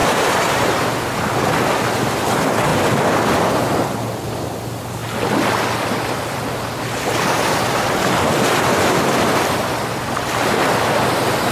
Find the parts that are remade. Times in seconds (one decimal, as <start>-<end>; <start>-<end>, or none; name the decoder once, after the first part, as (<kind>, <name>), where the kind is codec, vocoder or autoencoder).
0.0-0.9 (vocoder, BigVGAN v2)